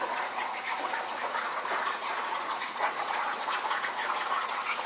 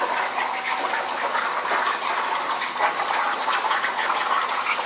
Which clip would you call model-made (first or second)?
first